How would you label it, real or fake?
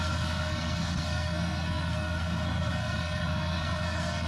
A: fake